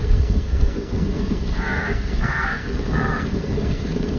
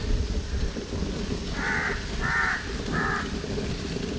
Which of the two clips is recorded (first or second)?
second